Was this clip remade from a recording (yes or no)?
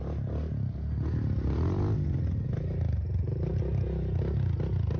no